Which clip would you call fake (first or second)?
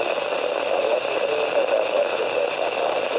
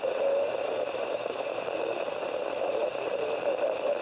second